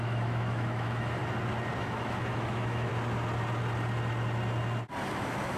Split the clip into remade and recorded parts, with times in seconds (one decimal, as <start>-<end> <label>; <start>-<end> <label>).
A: 0.0-1.2 remade; 1.2-1.8 recorded; 1.8-2.9 remade; 2.9-5.1 recorded; 5.1-5.6 remade